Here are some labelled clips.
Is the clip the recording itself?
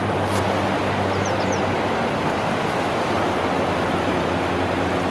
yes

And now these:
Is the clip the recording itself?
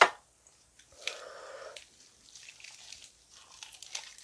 yes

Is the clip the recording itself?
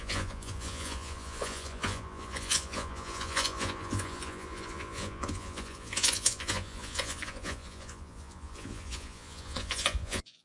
no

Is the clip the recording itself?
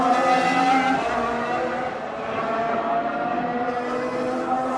yes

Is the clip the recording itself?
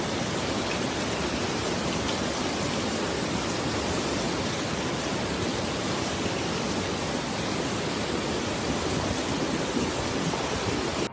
yes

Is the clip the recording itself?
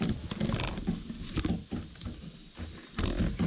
yes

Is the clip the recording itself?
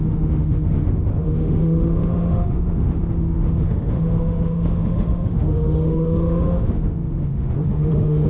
no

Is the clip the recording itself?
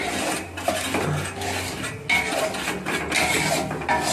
yes